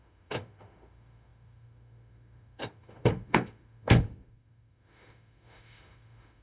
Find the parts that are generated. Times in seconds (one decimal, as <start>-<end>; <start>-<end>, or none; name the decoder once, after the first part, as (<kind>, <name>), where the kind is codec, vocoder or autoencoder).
0.0-6.4 (autoencoder, DAC-VAE)